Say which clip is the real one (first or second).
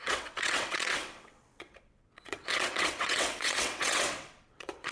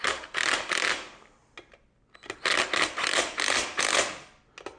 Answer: second